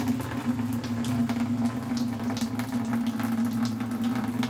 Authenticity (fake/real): real